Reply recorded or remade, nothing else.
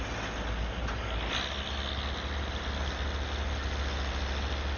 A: recorded